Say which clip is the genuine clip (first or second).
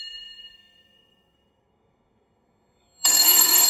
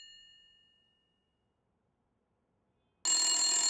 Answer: second